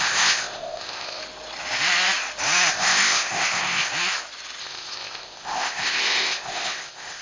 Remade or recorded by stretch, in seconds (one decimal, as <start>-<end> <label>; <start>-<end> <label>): 0.0-1.2 remade; 1.2-2.7 recorded; 2.7-3.9 remade; 3.9-4.6 recorded; 4.6-7.2 remade